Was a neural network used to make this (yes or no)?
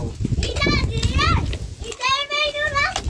no